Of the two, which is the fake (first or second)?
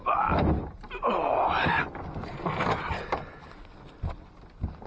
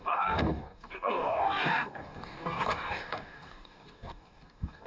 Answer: second